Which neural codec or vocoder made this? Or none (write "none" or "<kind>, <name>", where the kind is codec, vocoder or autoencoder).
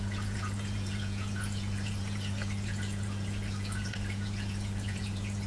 vocoder, Vocos